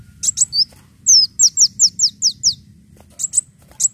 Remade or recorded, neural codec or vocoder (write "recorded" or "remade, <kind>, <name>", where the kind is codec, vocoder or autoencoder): recorded